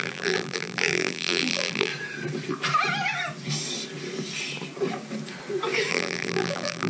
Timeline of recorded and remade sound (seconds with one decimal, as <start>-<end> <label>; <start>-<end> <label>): 0.0-1.9 remade; 1.9-5.9 recorded; 5.9-6.9 remade

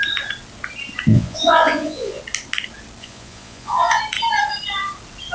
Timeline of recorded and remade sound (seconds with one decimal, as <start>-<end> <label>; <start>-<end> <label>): 0.0-1.1 recorded; 1.1-2.2 remade; 2.2-3.0 recorded; 3.0-4.0 remade; 4.0-5.3 recorded